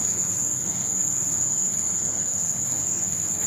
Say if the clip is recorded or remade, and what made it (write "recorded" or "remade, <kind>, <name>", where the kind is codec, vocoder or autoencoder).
remade, codec, SNAC